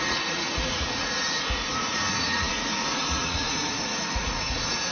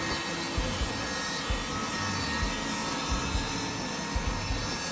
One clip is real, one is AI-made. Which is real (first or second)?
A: second